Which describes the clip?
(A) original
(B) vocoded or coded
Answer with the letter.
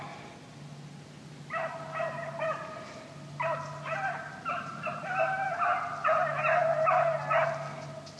A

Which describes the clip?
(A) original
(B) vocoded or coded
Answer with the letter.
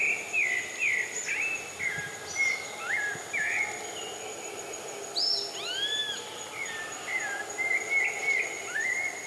A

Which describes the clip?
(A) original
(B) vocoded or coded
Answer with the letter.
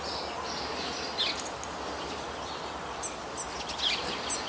A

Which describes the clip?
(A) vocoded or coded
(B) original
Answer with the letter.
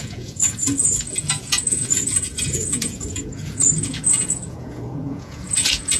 A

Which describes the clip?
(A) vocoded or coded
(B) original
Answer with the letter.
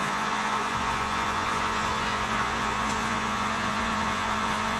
A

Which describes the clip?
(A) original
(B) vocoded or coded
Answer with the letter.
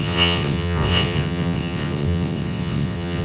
B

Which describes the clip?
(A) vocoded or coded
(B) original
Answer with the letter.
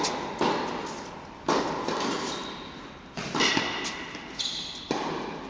B